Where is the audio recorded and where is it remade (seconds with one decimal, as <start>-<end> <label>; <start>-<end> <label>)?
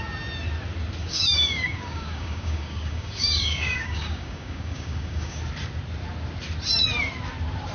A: 0.0-1.0 recorded; 1.0-5.4 remade; 5.4-7.7 recorded